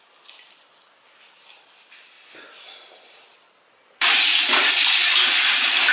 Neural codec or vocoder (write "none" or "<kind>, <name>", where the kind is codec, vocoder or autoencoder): none